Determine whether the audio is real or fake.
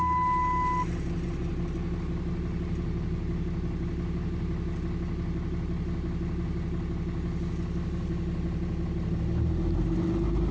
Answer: real